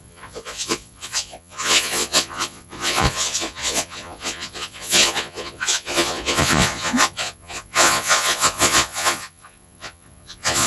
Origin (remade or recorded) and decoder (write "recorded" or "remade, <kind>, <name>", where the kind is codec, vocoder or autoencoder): remade, vocoder, Vocos